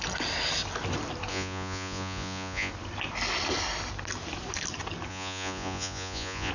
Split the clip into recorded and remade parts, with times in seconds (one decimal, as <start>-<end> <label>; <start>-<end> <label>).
0.0-1.3 recorded; 1.3-2.7 remade; 2.7-5.1 recorded; 5.1-6.5 remade